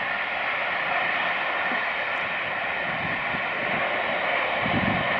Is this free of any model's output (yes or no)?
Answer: yes